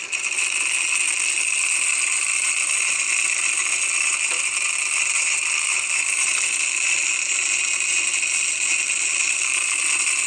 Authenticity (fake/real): real